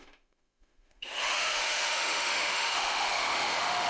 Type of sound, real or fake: fake